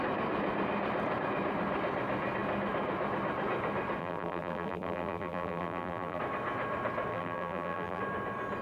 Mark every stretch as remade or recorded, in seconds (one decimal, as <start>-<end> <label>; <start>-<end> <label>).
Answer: 0.0-4.0 recorded; 4.0-6.2 remade; 6.2-7.1 recorded; 7.1-8.0 remade; 8.0-8.6 recorded

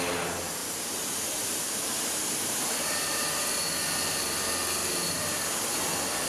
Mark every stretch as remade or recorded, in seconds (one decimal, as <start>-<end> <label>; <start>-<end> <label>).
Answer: 0.0-0.6 recorded; 0.6-3.5 remade; 3.5-4.8 recorded; 4.8-5.5 remade; 5.5-6.3 recorded

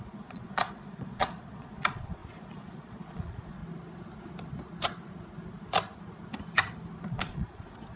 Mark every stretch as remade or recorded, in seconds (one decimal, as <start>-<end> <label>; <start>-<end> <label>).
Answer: 0.0-3.6 remade; 3.6-7.1 recorded; 7.1-8.0 remade

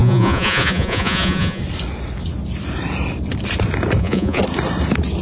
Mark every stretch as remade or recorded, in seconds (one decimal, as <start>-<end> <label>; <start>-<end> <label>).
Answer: 0.0-1.6 remade; 1.6-4.0 recorded; 4.0-4.4 remade; 4.4-5.2 recorded

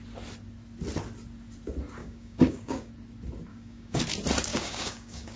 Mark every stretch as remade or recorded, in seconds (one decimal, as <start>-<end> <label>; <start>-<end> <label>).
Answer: 0.0-2.0 recorded; 2.0-2.9 remade; 2.9-3.5 recorded; 3.5-4.0 remade; 4.0-4.5 recorded; 4.5-5.4 remade

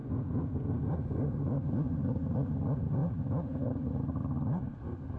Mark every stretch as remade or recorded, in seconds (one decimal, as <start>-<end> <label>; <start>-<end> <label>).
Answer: 0.0-0.8 remade; 0.8-5.2 recorded

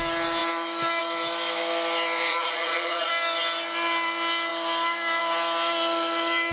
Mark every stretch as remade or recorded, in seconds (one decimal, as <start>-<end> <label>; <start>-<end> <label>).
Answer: 0.0-2.3 recorded; 2.3-3.1 remade; 3.1-6.5 recorded

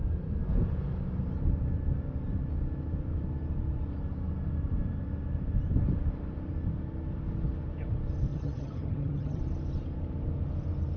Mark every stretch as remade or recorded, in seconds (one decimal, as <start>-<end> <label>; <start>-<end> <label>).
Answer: 0.0-8.3 recorded; 8.3-9.4 remade; 9.4-11.0 recorded